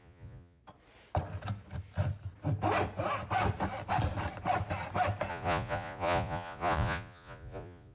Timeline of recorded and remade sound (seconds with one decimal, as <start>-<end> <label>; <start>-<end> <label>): 0.0-0.6 remade; 0.6-5.3 recorded; 5.3-7.9 remade